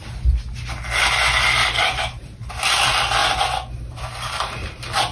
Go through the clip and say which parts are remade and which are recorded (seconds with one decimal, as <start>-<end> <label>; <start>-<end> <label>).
0.0-1.6 recorded; 1.6-2.5 remade; 2.5-5.1 recorded